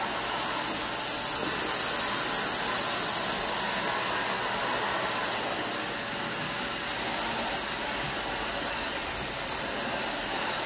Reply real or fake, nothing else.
real